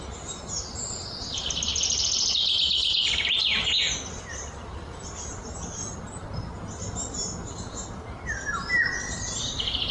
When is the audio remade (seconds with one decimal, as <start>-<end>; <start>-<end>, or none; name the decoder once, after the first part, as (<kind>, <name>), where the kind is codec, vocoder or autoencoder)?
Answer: none